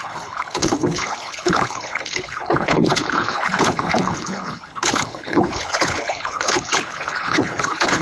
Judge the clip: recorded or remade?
remade